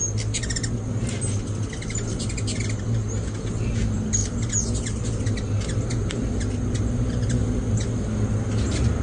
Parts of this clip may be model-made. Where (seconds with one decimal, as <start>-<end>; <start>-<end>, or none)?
none